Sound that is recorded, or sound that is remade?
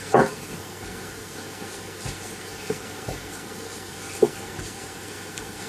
remade